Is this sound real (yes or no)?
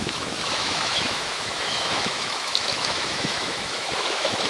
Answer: no